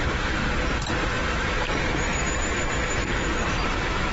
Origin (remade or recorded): remade